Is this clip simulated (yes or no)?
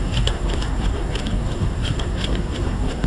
yes